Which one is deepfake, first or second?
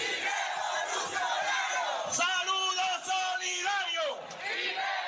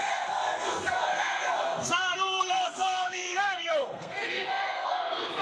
second